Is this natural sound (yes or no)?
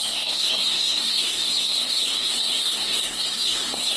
no